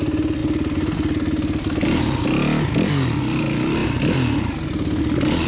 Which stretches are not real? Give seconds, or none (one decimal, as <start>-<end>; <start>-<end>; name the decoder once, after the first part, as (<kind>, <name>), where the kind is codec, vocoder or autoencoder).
none